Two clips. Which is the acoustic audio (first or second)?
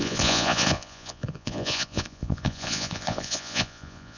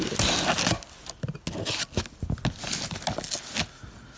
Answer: second